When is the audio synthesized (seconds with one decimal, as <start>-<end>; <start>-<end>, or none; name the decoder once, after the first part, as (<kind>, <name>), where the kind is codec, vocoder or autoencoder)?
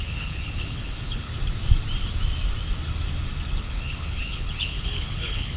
0.0-1.3 (codec, HILCodec); 3.6-5.6